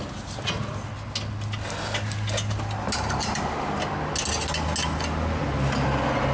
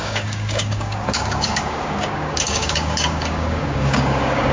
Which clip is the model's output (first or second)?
second